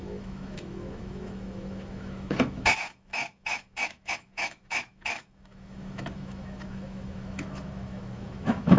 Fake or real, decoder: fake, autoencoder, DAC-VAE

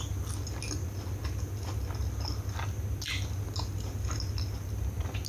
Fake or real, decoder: real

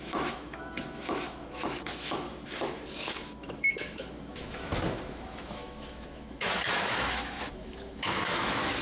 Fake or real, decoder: fake, autoencoder, DAC-VAE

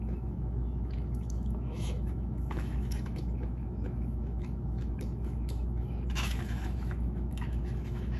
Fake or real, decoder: fake, autoencoder, DAC-VAE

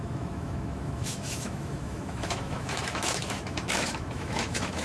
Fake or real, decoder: fake, autoencoder, DAC-VAE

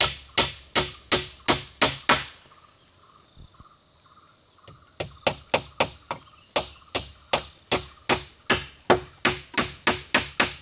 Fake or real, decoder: real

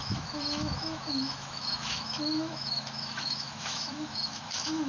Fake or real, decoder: fake, autoencoder, DAC-VAE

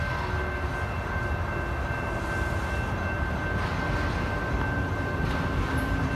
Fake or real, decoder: real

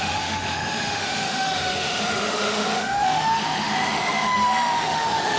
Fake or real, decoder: fake, autoencoder, DAC-VAE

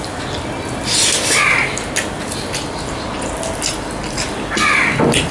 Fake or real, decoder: real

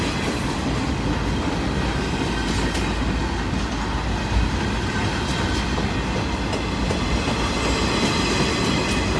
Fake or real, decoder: real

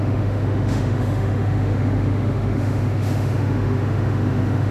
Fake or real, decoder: fake, autoencoder, DAC-VAE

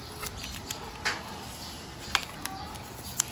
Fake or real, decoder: real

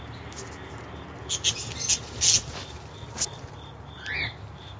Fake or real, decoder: real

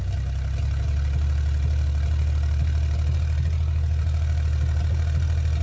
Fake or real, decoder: real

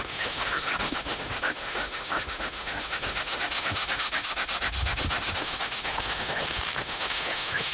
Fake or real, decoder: fake, autoencoder, DAC-VAE